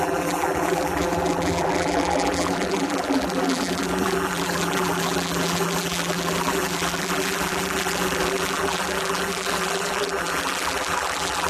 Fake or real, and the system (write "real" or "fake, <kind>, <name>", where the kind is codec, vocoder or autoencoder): fake, vocoder, BigVGAN v2